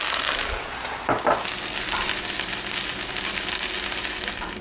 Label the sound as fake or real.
real